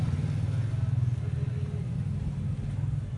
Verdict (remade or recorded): recorded